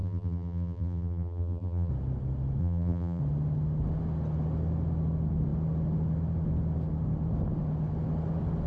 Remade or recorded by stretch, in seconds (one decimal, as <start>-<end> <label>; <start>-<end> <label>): 0.0-1.9 remade; 1.9-2.6 recorded; 2.6-3.2 remade; 3.2-8.7 recorded